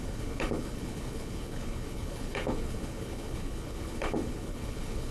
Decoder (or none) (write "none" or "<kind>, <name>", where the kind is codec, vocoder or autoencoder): codec, HILCodec